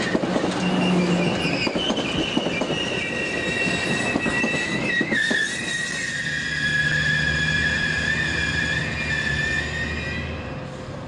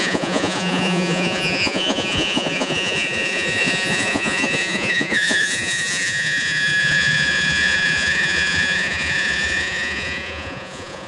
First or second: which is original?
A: first